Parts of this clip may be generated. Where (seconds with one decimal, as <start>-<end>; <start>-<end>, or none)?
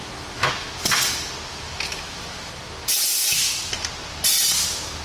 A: 0.0-0.5; 1.5-2.6